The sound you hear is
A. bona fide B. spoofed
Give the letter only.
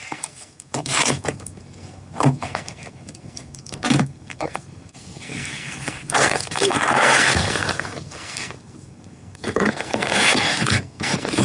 B